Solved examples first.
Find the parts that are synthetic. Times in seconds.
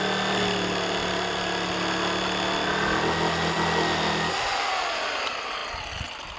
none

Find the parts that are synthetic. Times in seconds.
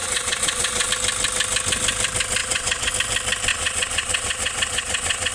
0.0-0.9 (vocoder, Vocos); 2.4-2.9; 3.5-5.3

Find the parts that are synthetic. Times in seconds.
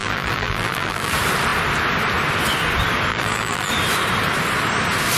0.0-1.1 (vocoder, BigVGAN v2); 3.1-3.7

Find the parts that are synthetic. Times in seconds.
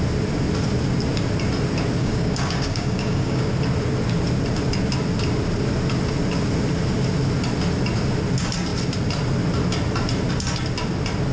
2.0-3.5 (codec, DAC)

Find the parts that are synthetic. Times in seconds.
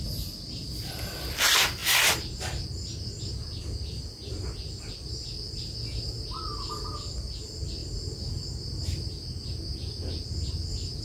none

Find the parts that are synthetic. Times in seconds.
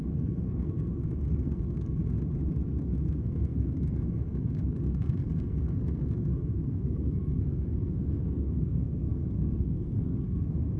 0.0-2.0 (codec, SNAC); 2.8-10.8